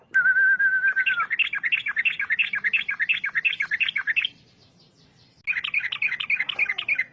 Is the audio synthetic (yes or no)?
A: no